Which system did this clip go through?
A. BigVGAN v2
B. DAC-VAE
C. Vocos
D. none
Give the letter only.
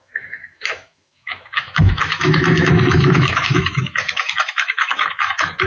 B